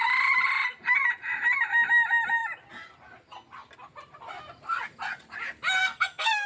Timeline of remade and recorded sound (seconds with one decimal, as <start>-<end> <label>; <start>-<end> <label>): 0.0-5.8 recorded; 5.8-6.5 remade